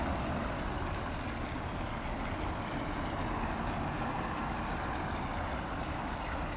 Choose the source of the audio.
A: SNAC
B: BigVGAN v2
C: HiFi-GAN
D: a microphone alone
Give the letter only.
D